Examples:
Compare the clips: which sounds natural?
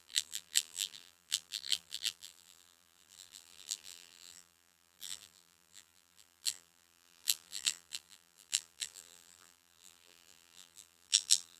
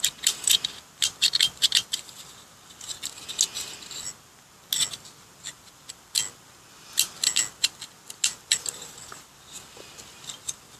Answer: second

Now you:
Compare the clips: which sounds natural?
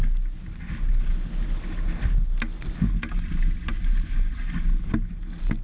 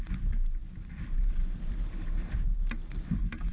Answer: first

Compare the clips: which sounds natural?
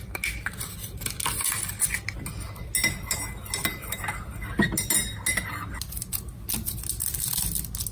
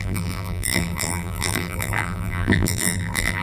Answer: first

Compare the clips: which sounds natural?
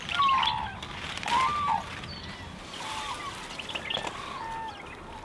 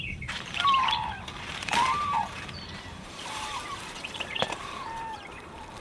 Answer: first